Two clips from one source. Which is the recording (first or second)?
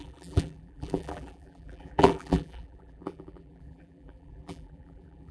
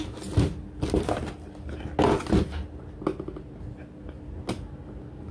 second